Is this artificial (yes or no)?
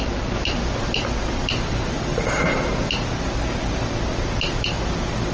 no